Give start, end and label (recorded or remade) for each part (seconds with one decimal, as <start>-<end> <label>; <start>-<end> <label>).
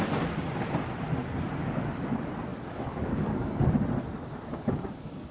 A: 0.0-2.5 recorded; 2.5-3.7 remade; 3.7-4.5 recorded; 4.5-5.3 remade